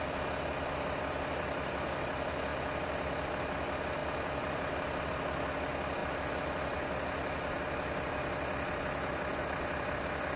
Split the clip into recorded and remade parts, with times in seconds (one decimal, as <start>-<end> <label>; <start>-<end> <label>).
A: 0.0-10.4 recorded